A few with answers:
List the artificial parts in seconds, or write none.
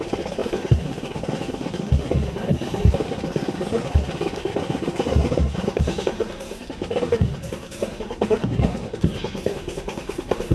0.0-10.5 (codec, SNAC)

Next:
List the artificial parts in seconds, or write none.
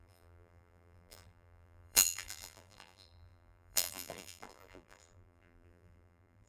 0.0-6.5 (vocoder, BigVGAN v2)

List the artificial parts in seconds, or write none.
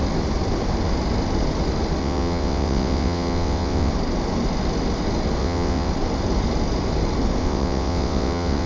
2.0-3.9 (vocoder, WaveNeXt); 5.4-5.9; 7.4-8.7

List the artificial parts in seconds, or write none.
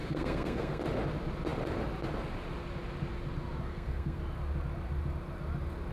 0.0-0.8 (codec, SNAC); 3.7-4.2